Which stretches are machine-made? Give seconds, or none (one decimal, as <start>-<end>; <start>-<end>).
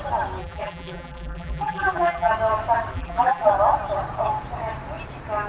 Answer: 0.4-2.3; 2.9-3.5